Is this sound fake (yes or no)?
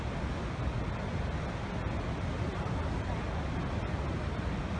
no